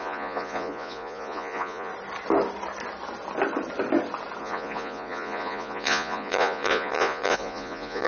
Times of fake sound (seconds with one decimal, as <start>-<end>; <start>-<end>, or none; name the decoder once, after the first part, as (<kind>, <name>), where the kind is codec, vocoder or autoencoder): 0.0-1.9 (vocoder, Vocos); 4.4-8.1